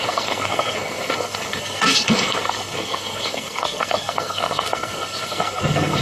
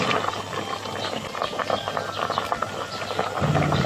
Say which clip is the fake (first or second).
first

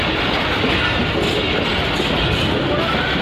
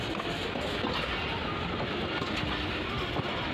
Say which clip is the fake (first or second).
second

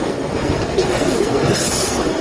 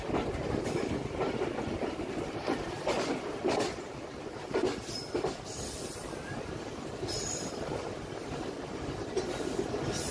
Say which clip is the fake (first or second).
first